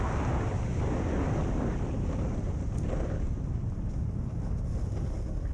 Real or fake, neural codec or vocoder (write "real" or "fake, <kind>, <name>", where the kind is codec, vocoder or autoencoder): real